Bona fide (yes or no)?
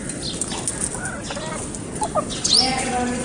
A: yes